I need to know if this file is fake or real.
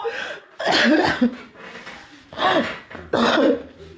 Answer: real